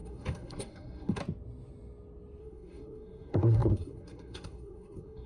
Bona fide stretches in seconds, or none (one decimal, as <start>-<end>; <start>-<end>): 1.2-2.4